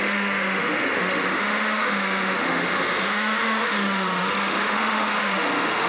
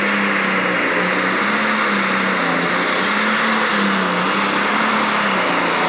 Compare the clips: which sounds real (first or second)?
second